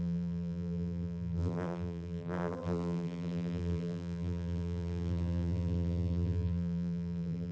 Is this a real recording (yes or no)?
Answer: no